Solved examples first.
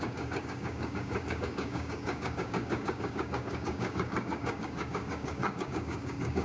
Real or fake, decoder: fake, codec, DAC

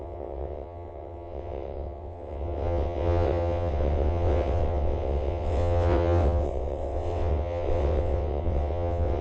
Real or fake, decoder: fake, vocoder, WaveNeXt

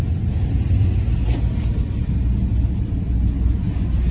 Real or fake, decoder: real